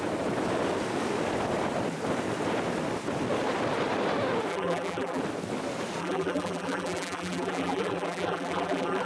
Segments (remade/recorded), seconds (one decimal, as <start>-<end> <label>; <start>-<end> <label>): 0.0-4.5 recorded; 4.5-5.2 remade; 5.2-6.0 recorded; 6.0-9.1 remade